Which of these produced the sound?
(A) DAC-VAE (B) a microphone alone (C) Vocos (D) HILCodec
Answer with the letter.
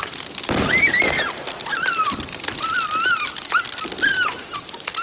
B